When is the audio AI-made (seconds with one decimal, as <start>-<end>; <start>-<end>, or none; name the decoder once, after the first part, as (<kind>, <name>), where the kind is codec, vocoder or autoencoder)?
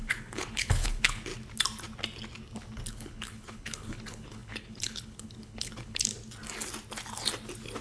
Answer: 0.0-1.3 (codec, HILCodec); 2.9-6.1